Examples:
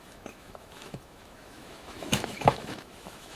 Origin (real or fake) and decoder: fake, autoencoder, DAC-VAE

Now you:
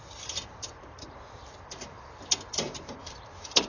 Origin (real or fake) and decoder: fake, vocoder, BigVGAN v2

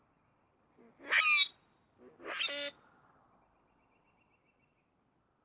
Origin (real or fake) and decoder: real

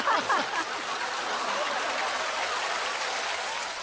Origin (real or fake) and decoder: real